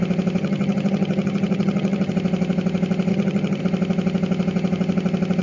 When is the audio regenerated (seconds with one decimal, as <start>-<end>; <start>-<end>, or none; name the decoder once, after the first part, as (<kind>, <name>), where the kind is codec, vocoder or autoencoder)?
0.4-2.1 (vocoder, HiFi-GAN); 3.1-3.6